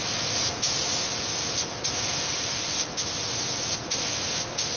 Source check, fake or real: real